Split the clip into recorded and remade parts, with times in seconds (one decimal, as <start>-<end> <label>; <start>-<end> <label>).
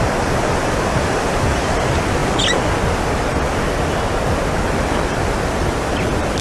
0.0-6.4 recorded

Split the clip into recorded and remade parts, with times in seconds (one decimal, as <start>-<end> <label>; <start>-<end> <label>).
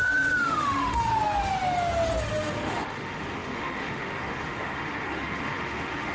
0.0-1.1 remade; 1.1-2.2 recorded; 2.2-6.1 remade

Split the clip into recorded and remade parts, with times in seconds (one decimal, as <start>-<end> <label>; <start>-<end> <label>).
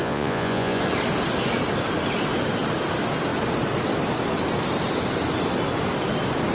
0.0-0.8 remade; 0.8-6.5 recorded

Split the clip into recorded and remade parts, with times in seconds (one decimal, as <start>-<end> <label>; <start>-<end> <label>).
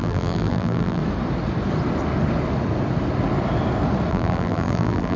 0.0-1.0 remade; 1.0-4.1 recorded; 4.1-5.2 remade